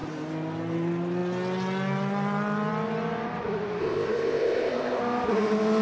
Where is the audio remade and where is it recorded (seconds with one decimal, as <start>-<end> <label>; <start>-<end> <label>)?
0.0-3.8 recorded; 3.8-5.0 remade; 5.0-5.8 recorded